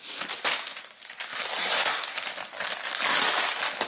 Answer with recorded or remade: recorded